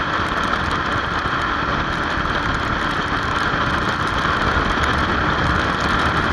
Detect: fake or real real